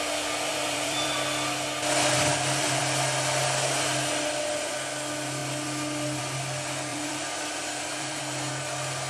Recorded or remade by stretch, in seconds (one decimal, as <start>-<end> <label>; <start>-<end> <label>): 0.0-0.5 recorded; 0.5-1.1 remade; 1.1-2.3 recorded; 2.3-2.8 remade; 2.8-6.9 recorded; 6.9-8.2 remade; 8.2-9.1 recorded